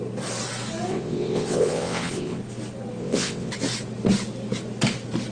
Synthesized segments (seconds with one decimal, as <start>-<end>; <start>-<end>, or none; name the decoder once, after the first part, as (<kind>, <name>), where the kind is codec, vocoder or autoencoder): 0.9-2.4 (vocoder, WaveNeXt); 3.0-3.5